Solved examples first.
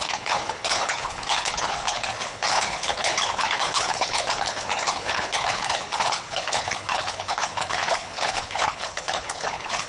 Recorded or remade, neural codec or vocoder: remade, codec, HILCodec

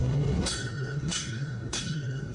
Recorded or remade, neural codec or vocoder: remade, codec, SNAC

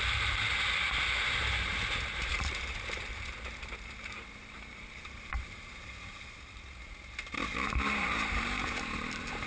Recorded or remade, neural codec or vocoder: remade, vocoder, BigVGAN v2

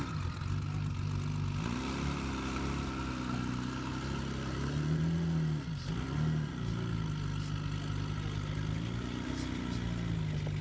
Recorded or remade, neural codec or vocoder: recorded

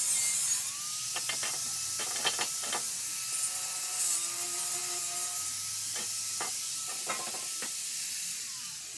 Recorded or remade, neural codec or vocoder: recorded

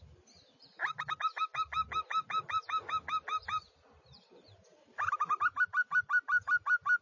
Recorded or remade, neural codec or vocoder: recorded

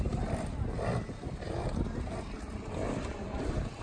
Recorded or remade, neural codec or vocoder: recorded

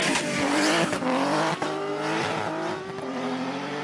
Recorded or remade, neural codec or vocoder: remade, vocoder, BigVGAN v2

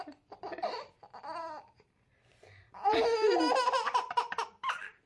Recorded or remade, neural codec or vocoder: remade, vocoder, BigVGAN v2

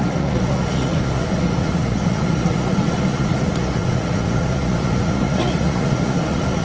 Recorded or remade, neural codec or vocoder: remade, vocoder, Vocos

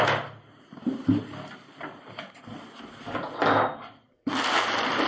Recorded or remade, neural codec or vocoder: recorded